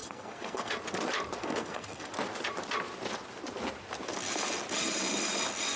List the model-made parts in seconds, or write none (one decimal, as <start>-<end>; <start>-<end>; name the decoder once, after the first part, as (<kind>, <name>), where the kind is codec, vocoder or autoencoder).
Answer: 0.0-0.7 (codec, SNAC); 1.4-2.1